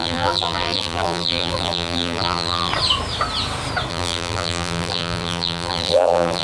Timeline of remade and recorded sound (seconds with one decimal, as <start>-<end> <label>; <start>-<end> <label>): 0.0-2.7 remade; 2.7-3.9 recorded; 3.9-6.4 remade